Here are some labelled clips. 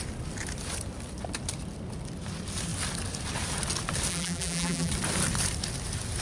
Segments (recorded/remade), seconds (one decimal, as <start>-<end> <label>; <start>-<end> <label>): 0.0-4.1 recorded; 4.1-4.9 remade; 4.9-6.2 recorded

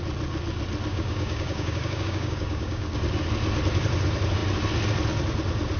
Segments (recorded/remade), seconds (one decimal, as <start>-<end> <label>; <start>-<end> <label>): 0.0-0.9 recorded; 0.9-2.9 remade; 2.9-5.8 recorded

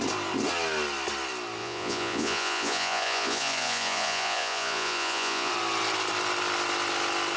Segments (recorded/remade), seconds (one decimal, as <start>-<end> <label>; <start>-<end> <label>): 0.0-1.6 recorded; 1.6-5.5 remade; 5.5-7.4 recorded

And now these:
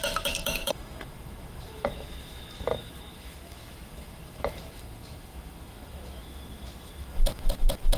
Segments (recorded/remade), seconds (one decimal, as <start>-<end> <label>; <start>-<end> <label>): 0.0-8.0 remade